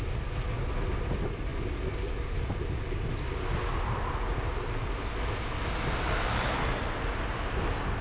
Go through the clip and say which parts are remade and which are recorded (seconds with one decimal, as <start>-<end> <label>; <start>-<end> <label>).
0.0-8.0 recorded